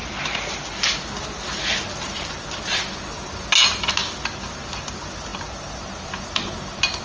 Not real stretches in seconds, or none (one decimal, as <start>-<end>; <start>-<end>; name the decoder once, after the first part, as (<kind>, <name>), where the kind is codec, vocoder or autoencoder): none